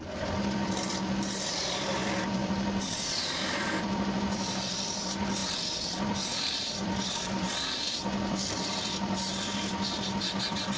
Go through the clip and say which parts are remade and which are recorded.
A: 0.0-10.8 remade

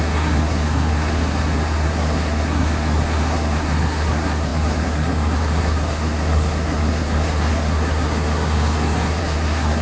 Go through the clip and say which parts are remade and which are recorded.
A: 0.0-9.8 remade

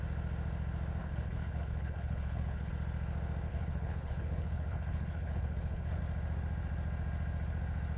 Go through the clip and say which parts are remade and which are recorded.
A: 0.0-1.0 recorded; 1.0-2.7 remade; 2.7-3.5 recorded; 3.5-6.0 remade; 6.0-8.0 recorded